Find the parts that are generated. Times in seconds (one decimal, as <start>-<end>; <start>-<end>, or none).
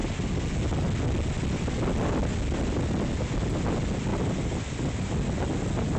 none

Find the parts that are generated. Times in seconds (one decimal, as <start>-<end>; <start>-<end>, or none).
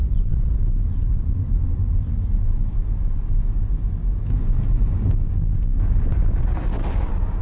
0.0-3.4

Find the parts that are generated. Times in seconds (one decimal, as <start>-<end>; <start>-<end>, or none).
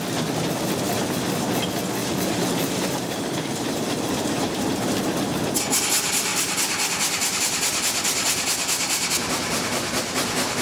2.0-5.2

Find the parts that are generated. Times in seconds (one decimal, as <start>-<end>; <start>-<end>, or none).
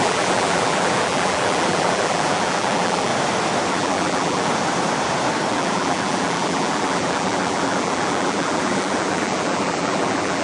0.0-3.1; 3.7-4.5; 5.5-10.4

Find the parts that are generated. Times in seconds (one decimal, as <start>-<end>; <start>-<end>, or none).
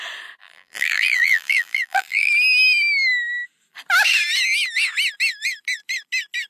0.4-2.3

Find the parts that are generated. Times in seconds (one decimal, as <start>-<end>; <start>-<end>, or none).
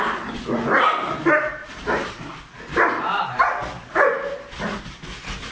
1.6-2.3; 2.7-3.5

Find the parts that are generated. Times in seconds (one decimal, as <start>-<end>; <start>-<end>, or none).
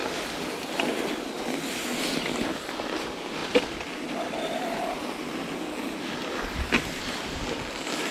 none